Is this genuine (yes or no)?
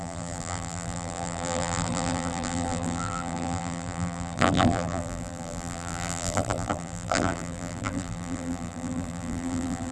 no